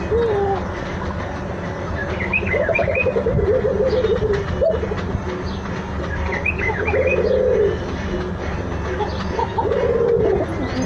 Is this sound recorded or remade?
recorded